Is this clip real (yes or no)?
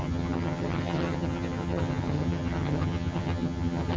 no